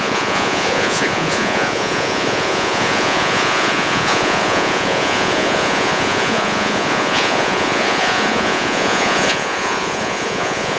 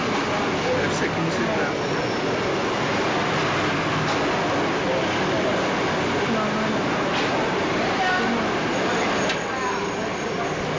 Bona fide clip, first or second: second